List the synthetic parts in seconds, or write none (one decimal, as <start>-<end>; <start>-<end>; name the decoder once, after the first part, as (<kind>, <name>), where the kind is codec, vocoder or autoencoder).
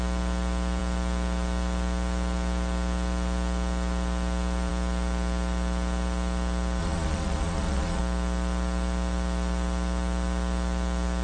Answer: 6.8-8.0 (vocoder, Vocos)